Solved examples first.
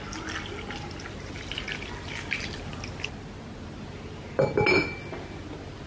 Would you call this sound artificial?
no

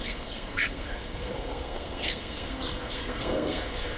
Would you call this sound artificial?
yes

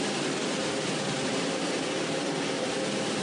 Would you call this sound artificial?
yes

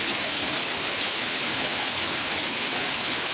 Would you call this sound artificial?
yes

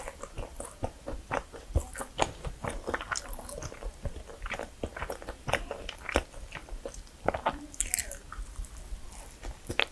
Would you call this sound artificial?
no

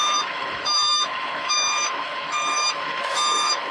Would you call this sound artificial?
yes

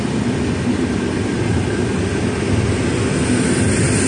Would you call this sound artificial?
no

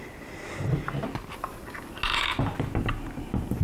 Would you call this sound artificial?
no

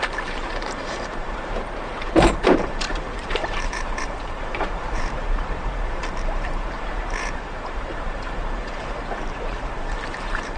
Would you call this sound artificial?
yes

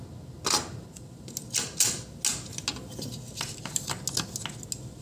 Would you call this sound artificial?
no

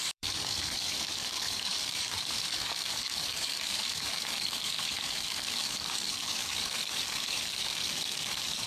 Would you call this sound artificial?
yes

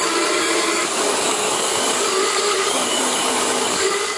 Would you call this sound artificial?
yes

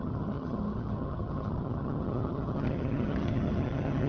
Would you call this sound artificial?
yes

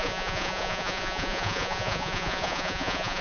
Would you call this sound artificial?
yes